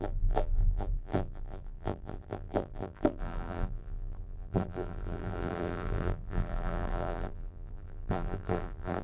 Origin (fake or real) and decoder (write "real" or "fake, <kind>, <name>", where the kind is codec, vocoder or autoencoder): fake, vocoder, BigVGAN v2